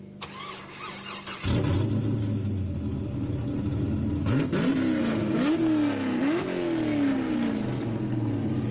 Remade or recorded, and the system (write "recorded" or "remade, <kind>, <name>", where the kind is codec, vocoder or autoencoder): recorded